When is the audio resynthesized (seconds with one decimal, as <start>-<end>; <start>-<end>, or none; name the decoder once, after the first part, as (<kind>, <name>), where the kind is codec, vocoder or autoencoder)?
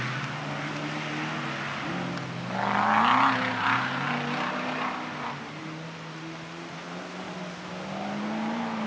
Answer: none